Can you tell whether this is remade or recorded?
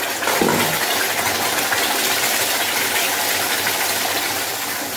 recorded